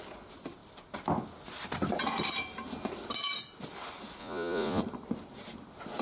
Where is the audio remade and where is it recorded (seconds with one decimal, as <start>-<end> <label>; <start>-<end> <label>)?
0.0-4.2 recorded; 4.2-4.8 remade; 4.8-6.0 recorded